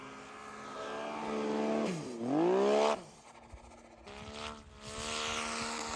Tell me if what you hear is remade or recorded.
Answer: recorded